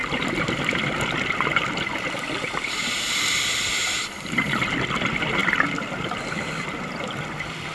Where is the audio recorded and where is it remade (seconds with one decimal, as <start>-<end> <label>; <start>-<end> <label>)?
0.0-7.7 recorded